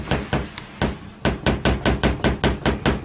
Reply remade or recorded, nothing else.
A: recorded